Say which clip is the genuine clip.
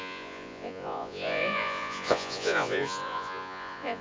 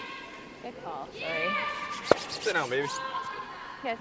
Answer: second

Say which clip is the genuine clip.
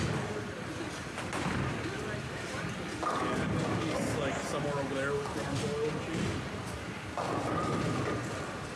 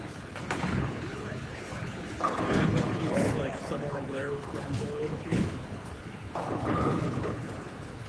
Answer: first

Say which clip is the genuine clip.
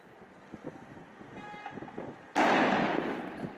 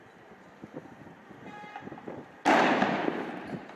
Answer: first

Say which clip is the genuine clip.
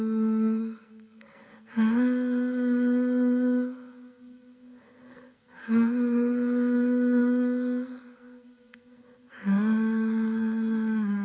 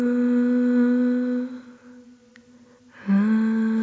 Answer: second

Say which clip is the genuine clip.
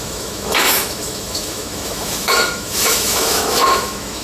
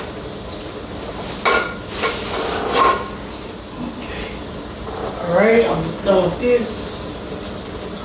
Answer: second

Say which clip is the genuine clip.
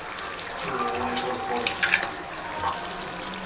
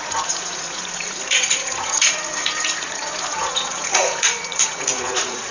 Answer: first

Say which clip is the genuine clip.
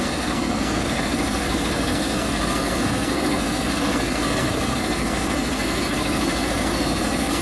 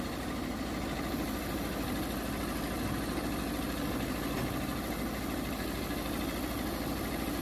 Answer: second